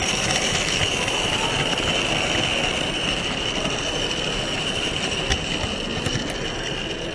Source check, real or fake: real